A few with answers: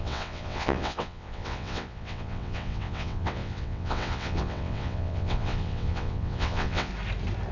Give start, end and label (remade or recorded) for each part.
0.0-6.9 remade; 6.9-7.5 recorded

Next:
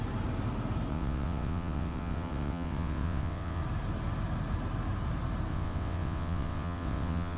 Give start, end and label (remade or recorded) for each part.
0.0-0.9 recorded; 0.9-3.6 remade; 3.6-5.5 recorded; 5.5-7.4 remade

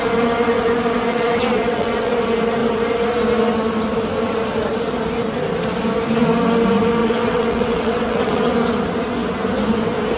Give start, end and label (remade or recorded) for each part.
0.0-1.1 recorded; 1.1-2.1 remade; 2.1-7.0 recorded; 7.0-8.5 remade; 8.5-10.2 recorded

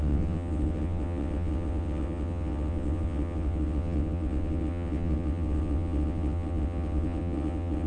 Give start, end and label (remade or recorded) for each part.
0.0-7.9 remade

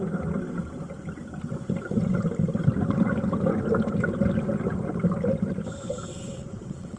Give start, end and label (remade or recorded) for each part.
0.0-6.1 recorded; 6.1-7.0 remade

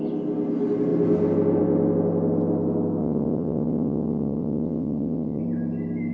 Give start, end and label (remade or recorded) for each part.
0.0-3.0 recorded; 3.0-5.4 remade; 5.4-6.1 recorded

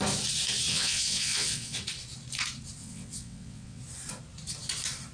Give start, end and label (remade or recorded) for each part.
0.0-0.7 recorded; 0.7-1.8 remade; 1.8-2.8 recorded; 2.8-3.8 remade; 3.8-5.1 recorded

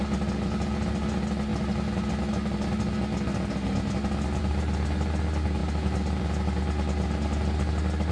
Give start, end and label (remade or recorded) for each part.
0.0-8.1 recorded